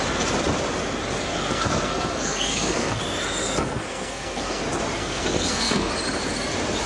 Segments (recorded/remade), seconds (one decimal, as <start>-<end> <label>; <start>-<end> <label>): 0.0-1.2 recorded; 1.2-3.0 remade; 3.0-3.4 recorded; 3.4-4.6 remade; 4.6-5.0 recorded; 5.0-5.9 remade; 5.9-6.9 recorded